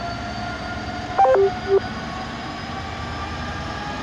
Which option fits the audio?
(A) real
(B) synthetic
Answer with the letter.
A